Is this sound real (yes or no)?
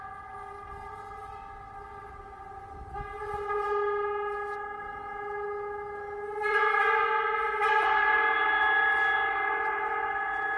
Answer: yes